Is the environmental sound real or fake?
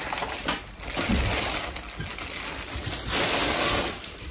real